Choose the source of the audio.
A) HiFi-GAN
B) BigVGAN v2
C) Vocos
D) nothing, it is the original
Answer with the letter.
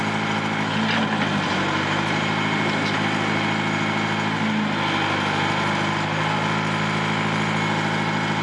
D